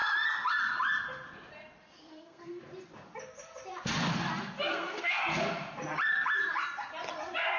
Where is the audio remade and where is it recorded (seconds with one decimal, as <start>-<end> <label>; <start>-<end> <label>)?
0.0-2.1 recorded; 2.1-2.6 remade; 2.6-4.7 recorded; 4.7-5.2 remade; 5.2-7.6 recorded